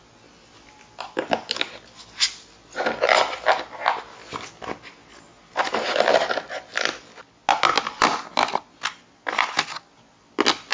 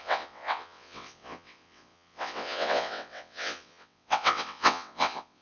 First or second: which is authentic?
first